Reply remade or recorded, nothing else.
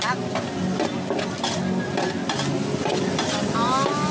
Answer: recorded